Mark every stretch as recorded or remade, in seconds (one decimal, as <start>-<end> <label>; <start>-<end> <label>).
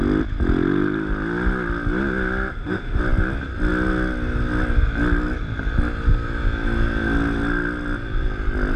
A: 0.0-2.5 recorded; 2.5-3.0 remade; 3.0-8.8 recorded